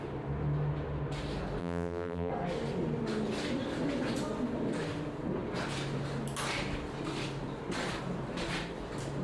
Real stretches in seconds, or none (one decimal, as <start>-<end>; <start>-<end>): 0.0-1.6; 2.3-9.2